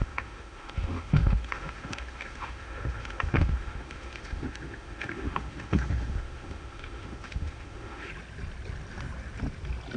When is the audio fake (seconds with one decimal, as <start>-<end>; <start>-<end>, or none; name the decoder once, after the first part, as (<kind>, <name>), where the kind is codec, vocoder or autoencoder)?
0.0-8.1 (autoencoder, DAC-VAE)